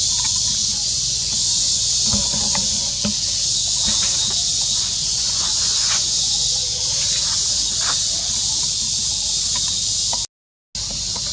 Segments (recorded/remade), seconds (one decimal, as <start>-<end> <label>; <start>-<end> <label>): 0.0-0.6 recorded; 0.6-3.0 remade; 3.0-4.5 recorded; 4.5-6.8 remade; 6.8-11.3 recorded